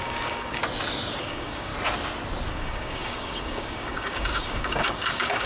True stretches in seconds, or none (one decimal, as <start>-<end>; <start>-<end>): 0.6-1.2; 1.7-2.5